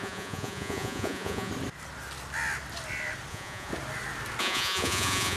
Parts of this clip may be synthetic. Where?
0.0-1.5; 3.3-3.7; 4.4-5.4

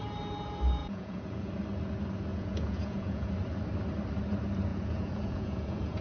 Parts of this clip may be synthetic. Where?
0.8-1.5; 2.3-3.3; 4.7-6.0